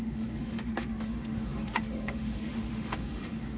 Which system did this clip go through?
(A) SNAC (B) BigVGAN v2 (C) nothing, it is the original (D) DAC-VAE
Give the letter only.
D